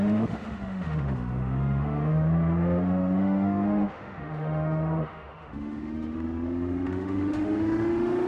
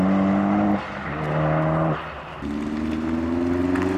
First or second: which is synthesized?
first